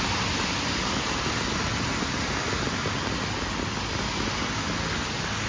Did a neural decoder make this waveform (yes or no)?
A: no